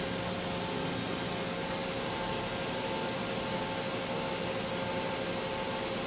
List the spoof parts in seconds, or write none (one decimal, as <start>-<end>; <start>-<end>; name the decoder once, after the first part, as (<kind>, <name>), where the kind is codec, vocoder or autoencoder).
none